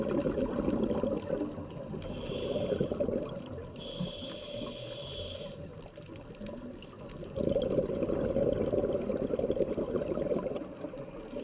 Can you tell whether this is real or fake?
real